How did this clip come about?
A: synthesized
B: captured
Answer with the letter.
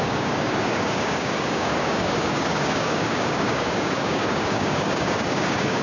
A